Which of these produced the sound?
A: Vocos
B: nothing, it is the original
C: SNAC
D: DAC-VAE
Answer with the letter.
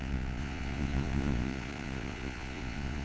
A